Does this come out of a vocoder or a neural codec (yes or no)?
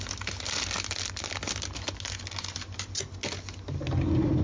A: no